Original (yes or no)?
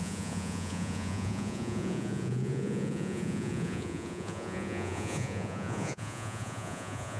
no